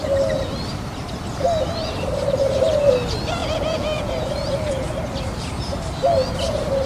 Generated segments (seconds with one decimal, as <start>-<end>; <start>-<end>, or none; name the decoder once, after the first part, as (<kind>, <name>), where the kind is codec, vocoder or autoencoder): 3.4-4.1 (vocoder, Vocos)

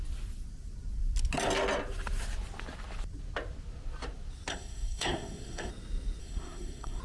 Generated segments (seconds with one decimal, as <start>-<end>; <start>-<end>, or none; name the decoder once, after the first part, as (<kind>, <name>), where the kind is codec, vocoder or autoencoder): 4.5-5.7 (codec, SNAC); 6.2-7.0

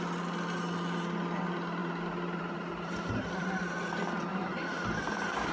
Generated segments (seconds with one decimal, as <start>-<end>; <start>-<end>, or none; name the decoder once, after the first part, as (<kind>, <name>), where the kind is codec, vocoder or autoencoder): 1.8-3.8 (vocoder, BigVGAN v2); 4.3-5.5

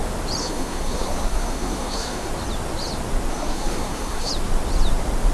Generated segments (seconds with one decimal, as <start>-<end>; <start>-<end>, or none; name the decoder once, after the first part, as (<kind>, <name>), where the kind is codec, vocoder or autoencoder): 0.4-2.3 (codec, SNAC); 3.3-4.3

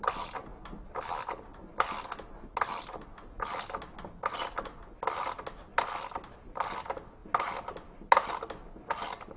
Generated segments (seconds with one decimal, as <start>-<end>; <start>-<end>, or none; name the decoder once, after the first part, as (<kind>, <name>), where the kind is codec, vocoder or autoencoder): none